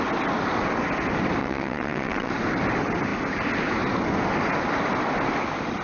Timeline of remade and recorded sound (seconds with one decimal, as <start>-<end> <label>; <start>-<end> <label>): 0.0-1.4 recorded; 1.4-2.3 remade; 2.3-5.8 recorded